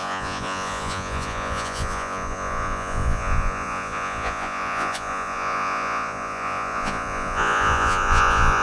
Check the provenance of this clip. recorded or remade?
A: remade